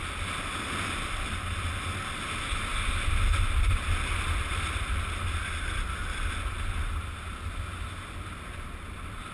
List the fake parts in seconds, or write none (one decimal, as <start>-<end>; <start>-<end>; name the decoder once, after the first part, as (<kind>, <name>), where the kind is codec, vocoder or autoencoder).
none

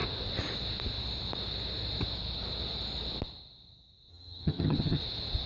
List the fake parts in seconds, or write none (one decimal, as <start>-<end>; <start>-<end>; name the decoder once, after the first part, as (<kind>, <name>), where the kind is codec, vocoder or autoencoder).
4.1-5.0 (vocoder, HiFi-GAN)